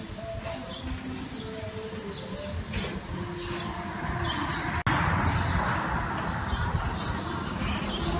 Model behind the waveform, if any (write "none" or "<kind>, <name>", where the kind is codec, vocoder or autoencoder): none